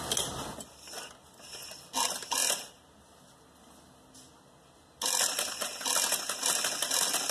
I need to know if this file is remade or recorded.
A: recorded